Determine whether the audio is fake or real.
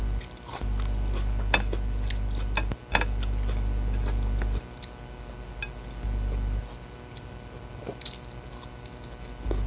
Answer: real